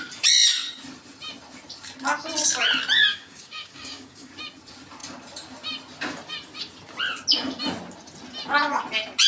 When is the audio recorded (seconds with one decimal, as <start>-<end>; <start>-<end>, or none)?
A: 0.0-3.1; 4.3-9.3